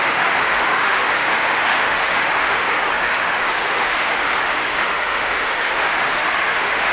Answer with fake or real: fake